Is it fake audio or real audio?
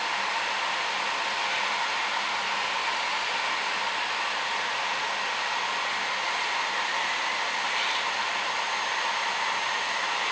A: real